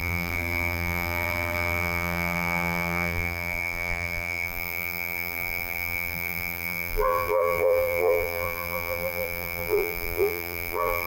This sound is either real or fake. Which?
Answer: fake